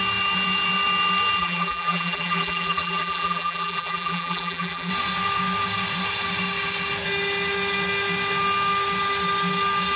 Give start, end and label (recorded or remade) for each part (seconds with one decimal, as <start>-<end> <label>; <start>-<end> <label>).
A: 0.0-1.4 recorded; 1.4-4.9 remade; 4.9-10.0 recorded